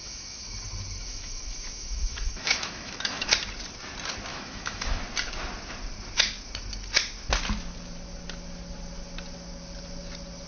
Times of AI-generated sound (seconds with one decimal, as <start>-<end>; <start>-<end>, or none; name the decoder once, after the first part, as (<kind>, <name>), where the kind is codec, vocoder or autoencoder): 0.0-0.6 (autoencoder, DAC-VAE); 1.0-3.3; 4.3-5.0